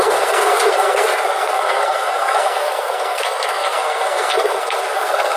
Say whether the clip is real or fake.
fake